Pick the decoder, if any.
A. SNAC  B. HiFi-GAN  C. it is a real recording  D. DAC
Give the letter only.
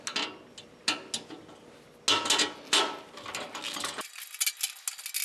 C